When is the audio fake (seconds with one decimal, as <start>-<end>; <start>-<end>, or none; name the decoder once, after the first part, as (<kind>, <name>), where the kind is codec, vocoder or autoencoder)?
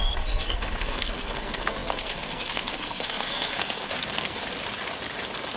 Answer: 0.0-4.4 (codec, SNAC)